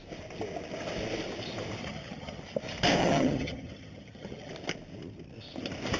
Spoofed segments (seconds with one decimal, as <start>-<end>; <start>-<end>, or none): 1.8-2.4; 3.0-4.5